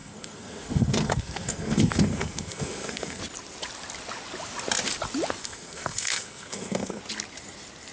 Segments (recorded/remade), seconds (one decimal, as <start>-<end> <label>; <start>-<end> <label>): 0.0-3.2 remade; 3.2-5.4 recorded; 5.4-7.0 remade; 7.0-7.9 recorded